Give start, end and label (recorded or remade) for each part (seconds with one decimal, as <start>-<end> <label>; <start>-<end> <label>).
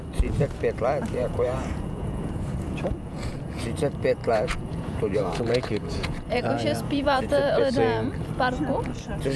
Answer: 0.0-1.2 recorded; 1.2-3.6 remade; 3.6-4.2 recorded; 4.2-7.6 remade; 7.6-9.4 recorded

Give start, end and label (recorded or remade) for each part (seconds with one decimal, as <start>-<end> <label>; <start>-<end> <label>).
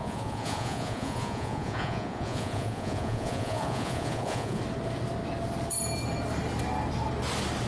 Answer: 0.0-4.6 remade; 4.6-7.7 recorded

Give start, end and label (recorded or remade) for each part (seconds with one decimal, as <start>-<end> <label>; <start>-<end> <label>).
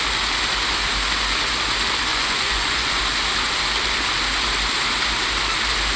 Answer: 0.0-2.1 recorded; 2.1-3.0 remade; 3.0-6.0 recorded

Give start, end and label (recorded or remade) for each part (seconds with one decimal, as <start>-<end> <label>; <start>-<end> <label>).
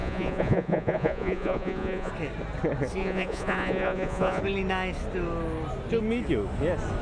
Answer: 0.0-2.1 remade; 2.1-3.0 recorded; 3.0-4.4 remade; 4.4-7.0 recorded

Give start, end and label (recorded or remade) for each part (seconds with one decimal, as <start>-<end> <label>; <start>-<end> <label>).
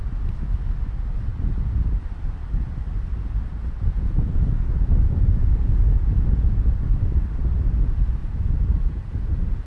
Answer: 0.0-3.6 recorded; 3.6-6.9 remade; 6.9-8.2 recorded; 8.2-9.7 remade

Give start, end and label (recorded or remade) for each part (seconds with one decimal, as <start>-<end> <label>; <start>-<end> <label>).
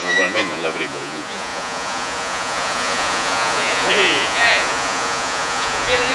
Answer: 0.0-6.1 remade